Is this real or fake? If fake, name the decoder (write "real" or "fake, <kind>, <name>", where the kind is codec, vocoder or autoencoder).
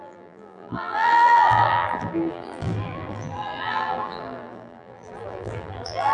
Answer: fake, vocoder, BigVGAN v2